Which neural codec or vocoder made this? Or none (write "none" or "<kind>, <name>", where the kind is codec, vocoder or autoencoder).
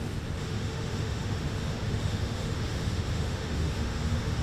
autoencoder, DAC-VAE